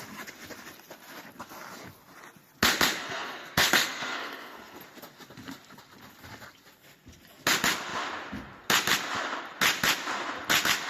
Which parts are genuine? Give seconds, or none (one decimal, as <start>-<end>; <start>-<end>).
0.0-3.0; 4.8-10.9